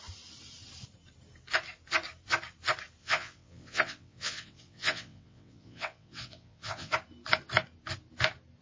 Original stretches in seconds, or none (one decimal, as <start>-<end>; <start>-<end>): 0.0-3.0; 6.9-8.6